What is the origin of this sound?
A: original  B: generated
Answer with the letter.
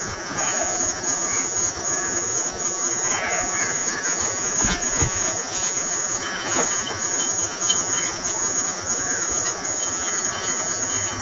B